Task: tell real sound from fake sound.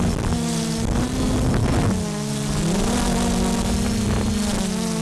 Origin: real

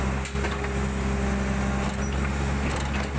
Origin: real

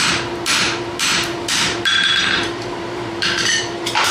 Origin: fake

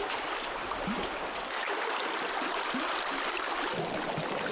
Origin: real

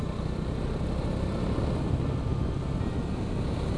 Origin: real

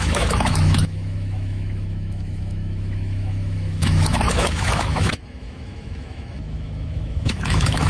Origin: fake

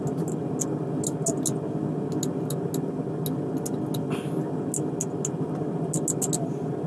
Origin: real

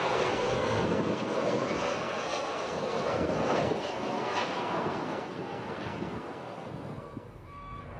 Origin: fake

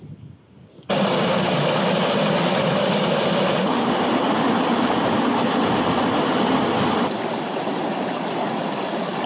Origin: real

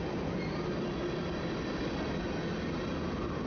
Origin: real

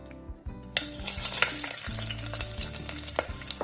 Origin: real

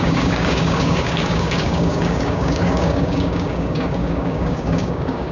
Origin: fake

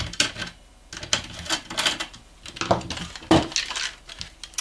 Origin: real